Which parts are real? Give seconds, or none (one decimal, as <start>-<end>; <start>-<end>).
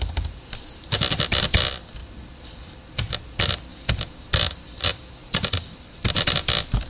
0.0-6.9